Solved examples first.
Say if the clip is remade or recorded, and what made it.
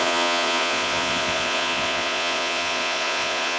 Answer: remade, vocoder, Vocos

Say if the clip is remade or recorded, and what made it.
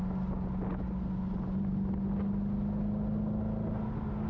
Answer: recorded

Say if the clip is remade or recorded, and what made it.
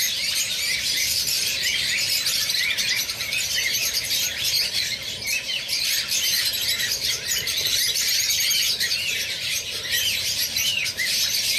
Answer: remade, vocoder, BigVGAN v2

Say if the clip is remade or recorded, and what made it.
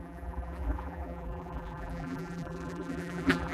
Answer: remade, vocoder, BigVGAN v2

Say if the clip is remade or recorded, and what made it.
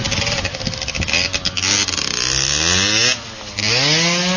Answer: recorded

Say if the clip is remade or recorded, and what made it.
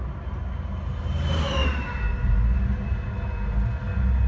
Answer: recorded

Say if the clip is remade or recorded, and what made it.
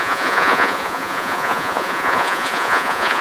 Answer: remade, vocoder, Vocos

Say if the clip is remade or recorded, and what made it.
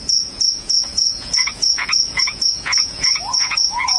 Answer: remade, vocoder, Vocos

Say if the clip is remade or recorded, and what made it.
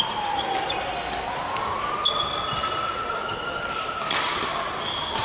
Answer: recorded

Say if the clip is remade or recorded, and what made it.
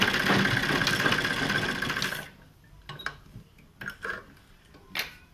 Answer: recorded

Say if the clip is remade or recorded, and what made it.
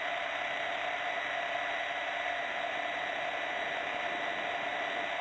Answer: recorded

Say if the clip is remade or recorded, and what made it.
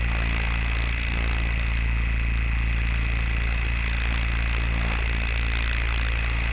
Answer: recorded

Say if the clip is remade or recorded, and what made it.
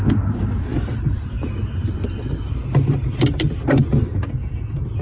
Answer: recorded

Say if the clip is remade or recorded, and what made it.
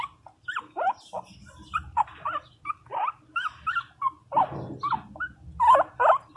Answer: recorded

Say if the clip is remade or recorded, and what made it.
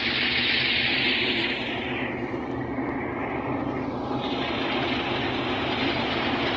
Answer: recorded